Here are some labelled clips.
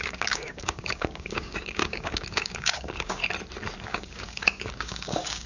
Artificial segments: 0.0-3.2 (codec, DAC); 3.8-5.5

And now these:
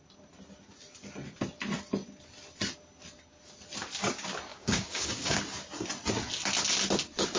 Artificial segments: 4.5-5.4 (codec, DAC)

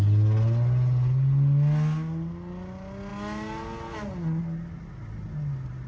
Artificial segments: none

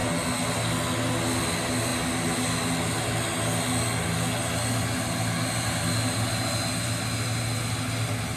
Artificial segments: none

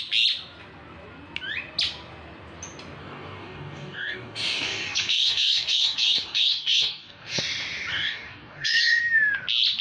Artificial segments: 3.0-7.4 (codec, DAC); 7.9-9.0

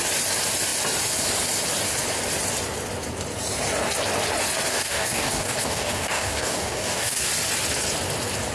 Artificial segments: 4.7-7.3 (codec, DAC)

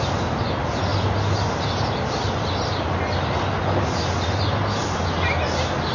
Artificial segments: none